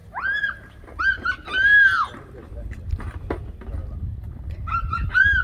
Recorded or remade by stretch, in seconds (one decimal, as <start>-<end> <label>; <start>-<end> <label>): 0.0-5.4 recorded

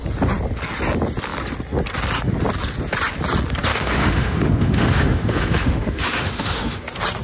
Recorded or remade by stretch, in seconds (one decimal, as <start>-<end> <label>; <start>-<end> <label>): 0.0-3.7 recorded; 3.7-6.8 remade; 6.8-7.2 recorded

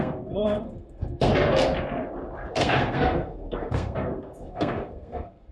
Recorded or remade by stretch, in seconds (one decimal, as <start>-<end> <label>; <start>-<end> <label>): 0.0-1.3 remade; 1.3-2.6 recorded; 2.6-5.5 remade

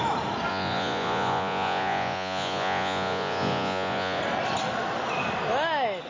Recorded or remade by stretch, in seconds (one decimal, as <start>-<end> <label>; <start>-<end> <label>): 0.0-0.5 recorded; 0.5-4.2 remade; 4.2-6.1 recorded

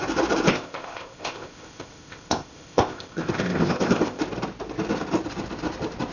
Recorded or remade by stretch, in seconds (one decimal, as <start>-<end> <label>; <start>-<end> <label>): 0.0-0.5 recorded; 0.5-4.2 remade; 4.2-6.1 recorded

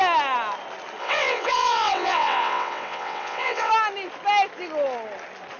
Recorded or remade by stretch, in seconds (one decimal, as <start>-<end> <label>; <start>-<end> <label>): 0.0-1.0 recorded; 1.0-3.7 remade; 3.7-5.6 recorded